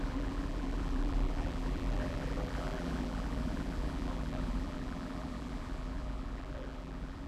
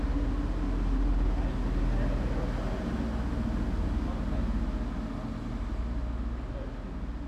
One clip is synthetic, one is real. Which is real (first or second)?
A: second